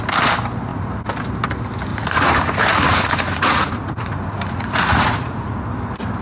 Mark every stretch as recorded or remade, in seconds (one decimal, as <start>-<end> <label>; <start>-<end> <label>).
0.0-1.9 recorded; 1.9-5.6 remade; 5.6-6.2 recorded